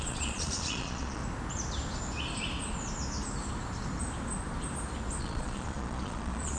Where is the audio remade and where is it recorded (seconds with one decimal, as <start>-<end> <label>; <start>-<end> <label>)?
0.0-1.2 remade; 1.2-5.2 recorded; 5.2-6.6 remade